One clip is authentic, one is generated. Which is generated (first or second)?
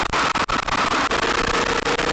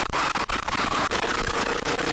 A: second